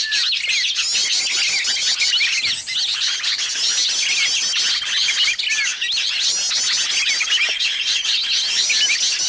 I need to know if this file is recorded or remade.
recorded